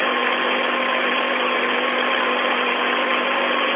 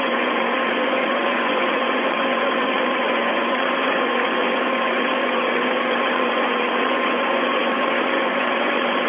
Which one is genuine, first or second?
first